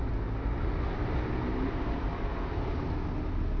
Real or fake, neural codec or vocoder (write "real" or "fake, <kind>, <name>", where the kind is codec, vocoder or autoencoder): real